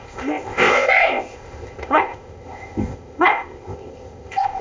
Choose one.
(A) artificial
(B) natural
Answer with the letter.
A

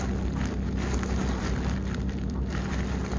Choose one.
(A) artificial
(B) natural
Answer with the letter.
B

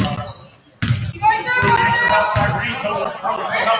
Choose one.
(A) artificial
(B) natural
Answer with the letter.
B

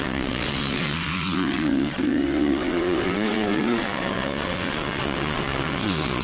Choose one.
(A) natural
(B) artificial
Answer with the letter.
B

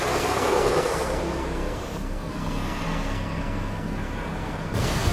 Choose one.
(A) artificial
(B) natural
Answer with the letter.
A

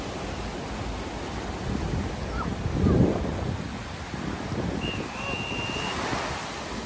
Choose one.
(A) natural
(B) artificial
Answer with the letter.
A